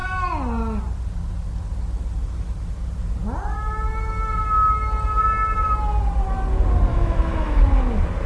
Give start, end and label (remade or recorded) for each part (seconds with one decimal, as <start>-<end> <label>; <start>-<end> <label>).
0.0-6.9 recorded; 6.9-7.6 remade; 7.6-8.3 recorded